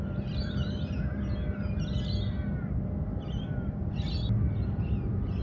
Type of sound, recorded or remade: recorded